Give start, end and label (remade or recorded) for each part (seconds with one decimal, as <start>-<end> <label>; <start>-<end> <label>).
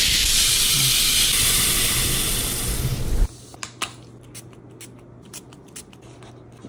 0.0-6.7 recorded